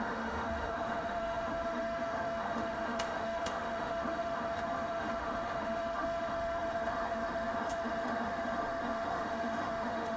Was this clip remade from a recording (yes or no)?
yes